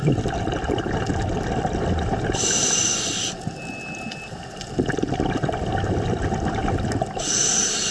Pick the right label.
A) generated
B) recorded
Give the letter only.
B